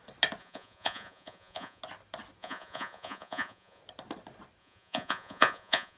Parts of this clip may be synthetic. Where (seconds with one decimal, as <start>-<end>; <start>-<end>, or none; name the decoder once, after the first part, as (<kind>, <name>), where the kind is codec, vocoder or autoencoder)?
0.4-1.8 (vocoder, Vocos); 2.4-3.8; 4.6-6.0